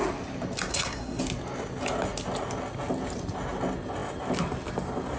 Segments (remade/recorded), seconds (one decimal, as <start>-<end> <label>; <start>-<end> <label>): 0.0-0.7 recorded; 0.7-1.2 remade; 1.2-5.2 recorded